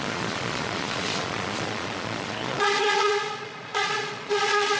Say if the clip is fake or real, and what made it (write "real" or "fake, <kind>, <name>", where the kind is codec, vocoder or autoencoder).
fake, vocoder, Vocos